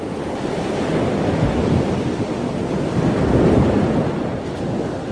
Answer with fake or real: real